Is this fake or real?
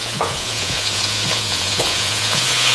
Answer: fake